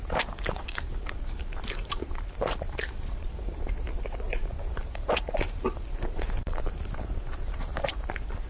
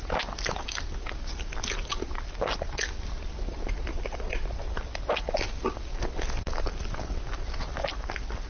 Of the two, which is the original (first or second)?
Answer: second